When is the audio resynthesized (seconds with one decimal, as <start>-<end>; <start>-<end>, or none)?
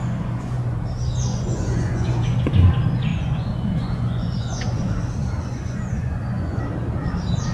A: 0.0-0.8; 1.3-2.5; 3.1-6.6